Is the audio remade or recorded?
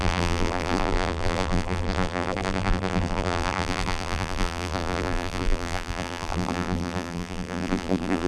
remade